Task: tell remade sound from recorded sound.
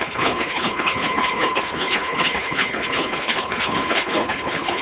remade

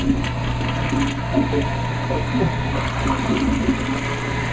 recorded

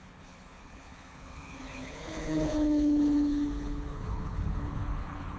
remade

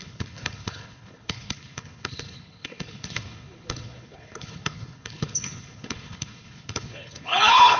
remade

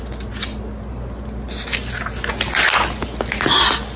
recorded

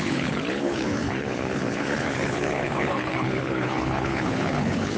remade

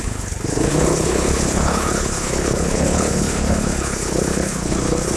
remade